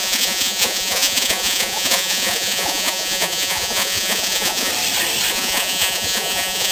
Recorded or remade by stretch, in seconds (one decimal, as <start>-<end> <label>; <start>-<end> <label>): 0.0-4.7 remade; 4.7-5.3 recorded; 5.3-6.7 remade